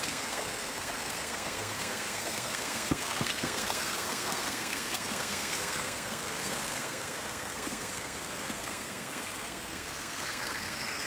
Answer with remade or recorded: remade